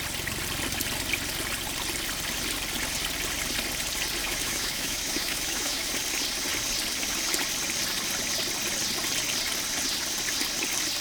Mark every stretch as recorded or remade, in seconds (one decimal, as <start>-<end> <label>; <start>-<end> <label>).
0.0-4.2 recorded; 4.2-5.9 remade; 5.9-11.0 recorded